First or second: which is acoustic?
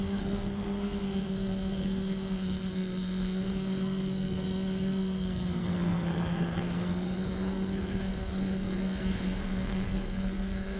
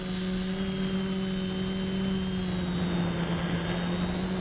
second